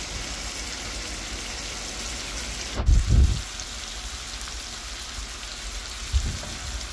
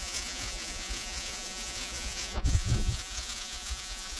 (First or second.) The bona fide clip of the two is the first